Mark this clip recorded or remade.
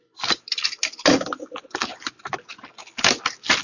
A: recorded